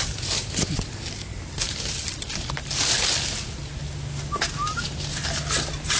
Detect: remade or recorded recorded